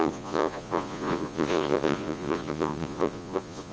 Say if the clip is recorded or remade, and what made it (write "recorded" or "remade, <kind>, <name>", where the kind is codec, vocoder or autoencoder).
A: remade, vocoder, Vocos